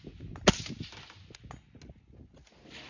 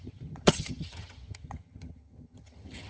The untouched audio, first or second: first